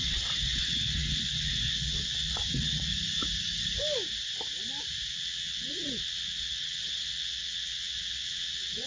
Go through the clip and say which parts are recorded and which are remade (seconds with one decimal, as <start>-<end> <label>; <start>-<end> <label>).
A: 0.0-2.9 remade; 2.9-5.1 recorded; 5.1-8.9 remade